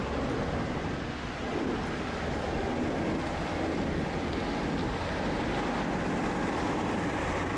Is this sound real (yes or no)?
yes